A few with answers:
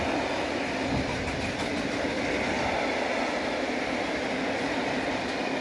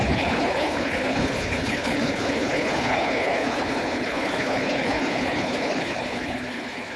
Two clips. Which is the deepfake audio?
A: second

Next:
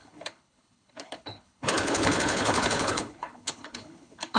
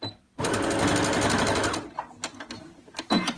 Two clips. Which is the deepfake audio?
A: first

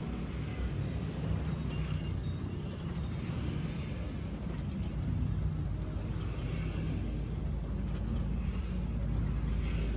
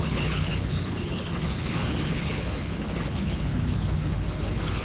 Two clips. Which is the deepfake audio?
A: second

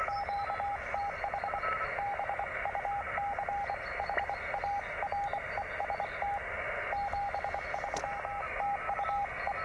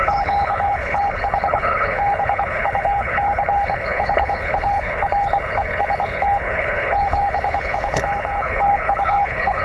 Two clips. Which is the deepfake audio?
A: second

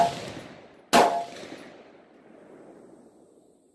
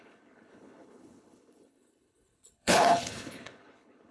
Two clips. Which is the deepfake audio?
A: second